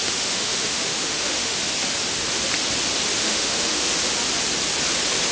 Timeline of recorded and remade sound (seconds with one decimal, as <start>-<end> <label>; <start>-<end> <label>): 0.0-1.6 remade; 1.6-3.2 recorded; 3.2-3.9 remade; 3.9-5.3 recorded